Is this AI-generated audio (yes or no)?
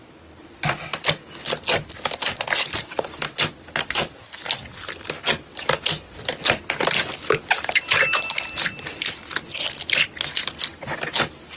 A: no